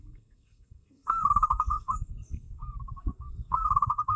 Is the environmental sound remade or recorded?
remade